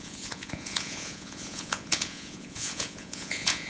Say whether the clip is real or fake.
fake